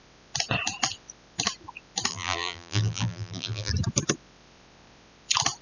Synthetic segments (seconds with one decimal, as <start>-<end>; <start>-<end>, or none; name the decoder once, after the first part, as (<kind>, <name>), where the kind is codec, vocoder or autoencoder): 2.1-3.7 (vocoder, BigVGAN v2)